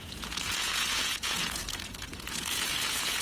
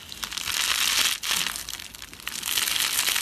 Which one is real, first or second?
second